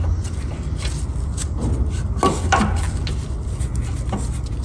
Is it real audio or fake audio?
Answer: real